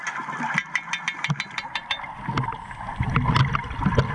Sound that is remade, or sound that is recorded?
recorded